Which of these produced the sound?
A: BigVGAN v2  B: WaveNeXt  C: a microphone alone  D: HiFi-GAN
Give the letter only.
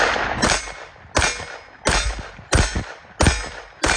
C